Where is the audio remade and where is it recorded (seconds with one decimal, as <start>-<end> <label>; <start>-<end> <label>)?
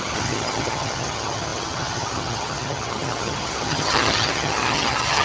0.0-5.2 remade